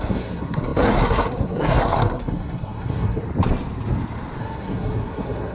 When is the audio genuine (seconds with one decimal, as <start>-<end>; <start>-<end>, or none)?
3.2-4.4